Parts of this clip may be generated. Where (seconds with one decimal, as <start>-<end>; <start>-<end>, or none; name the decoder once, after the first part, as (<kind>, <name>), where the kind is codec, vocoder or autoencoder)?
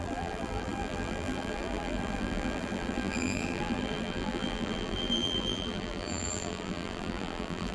0.0-7.7 (vocoder, BigVGAN v2)